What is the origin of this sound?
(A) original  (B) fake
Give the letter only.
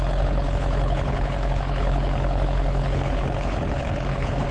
B